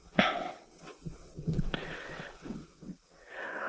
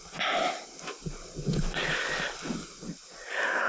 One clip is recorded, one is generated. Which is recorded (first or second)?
second